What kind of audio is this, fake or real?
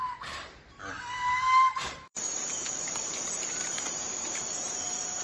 fake